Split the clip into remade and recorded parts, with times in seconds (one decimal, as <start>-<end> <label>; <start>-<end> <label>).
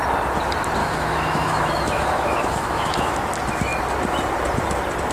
0.0-0.8 recorded; 0.8-3.1 remade; 3.1-5.1 recorded